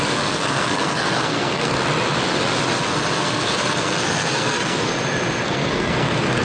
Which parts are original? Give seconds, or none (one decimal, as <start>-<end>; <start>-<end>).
1.7-3.2; 4.9-5.4